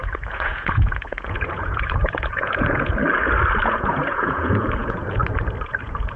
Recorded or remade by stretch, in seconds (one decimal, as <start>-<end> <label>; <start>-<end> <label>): 0.0-3.0 remade; 3.0-3.6 recorded; 3.6-5.2 remade; 5.2-5.7 recorded; 5.7-6.2 remade